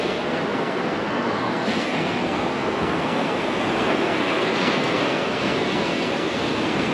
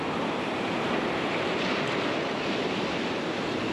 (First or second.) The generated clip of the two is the first